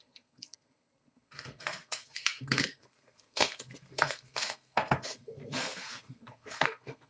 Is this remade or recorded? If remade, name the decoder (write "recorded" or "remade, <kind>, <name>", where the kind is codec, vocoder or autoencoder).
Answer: remade, codec, SNAC